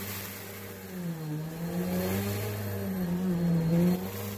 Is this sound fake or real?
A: real